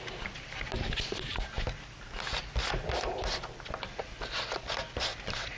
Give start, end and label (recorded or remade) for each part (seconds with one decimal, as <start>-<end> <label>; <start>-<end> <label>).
0.0-5.6 recorded